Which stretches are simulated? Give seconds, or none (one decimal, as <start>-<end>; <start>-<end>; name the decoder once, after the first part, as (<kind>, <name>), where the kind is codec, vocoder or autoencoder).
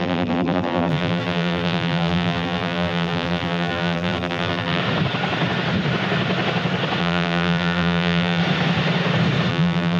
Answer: 0.0-4.8 (vocoder, BigVGAN v2); 7.0-8.4; 9.5-10.0